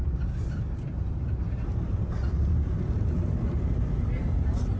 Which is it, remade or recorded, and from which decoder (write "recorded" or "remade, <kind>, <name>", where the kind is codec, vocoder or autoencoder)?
remade, vocoder, BigVGAN v2